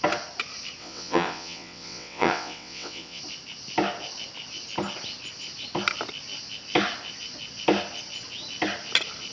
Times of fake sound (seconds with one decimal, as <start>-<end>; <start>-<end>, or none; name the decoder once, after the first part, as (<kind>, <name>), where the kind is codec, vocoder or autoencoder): 0.8-3.2 (vocoder, WaveNeXt)